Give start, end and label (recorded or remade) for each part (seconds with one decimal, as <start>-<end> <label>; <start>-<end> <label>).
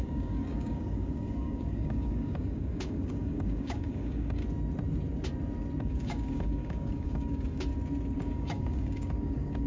0.0-4.4 remade; 4.4-5.8 recorded; 5.8-7.7 remade; 7.7-8.2 recorded; 8.2-9.7 remade